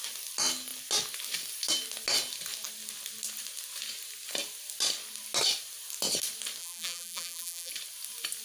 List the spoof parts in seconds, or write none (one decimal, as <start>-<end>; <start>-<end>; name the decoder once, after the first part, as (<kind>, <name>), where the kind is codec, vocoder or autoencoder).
6.6-7.7 (vocoder, BigVGAN v2)